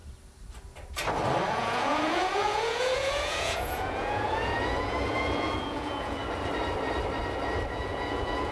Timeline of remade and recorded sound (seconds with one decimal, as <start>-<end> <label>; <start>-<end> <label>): 0.0-1.5 recorded; 1.5-6.2 remade; 6.2-7.7 recorded; 7.7-8.5 remade